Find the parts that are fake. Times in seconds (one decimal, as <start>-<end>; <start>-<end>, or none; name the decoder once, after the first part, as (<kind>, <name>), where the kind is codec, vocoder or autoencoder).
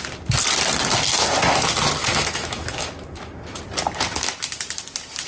2.0-3.6 (autoencoder, DAC-VAE)